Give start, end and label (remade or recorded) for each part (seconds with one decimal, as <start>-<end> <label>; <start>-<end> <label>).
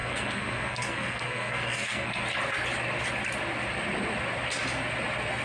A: 0.0-2.2 remade; 2.2-5.4 recorded